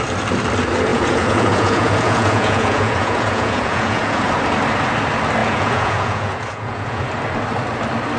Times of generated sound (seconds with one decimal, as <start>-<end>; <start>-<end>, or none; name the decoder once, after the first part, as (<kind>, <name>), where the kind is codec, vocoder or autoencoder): 0.9-4.3 (vocoder, Vocos); 5.4-7.0